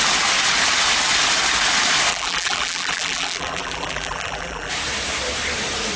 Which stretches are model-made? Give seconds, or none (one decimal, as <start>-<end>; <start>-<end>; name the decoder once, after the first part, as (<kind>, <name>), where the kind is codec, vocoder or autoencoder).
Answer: 2.1-4.7 (vocoder, BigVGAN v2)